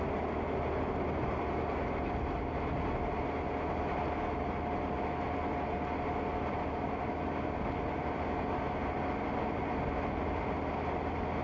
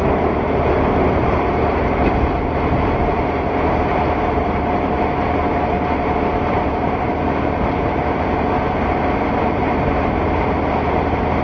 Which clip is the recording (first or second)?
first